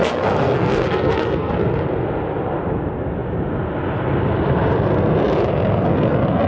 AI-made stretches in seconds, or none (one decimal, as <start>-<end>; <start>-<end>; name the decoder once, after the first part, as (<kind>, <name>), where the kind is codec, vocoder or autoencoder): 0.0-1.5 (codec, SNAC)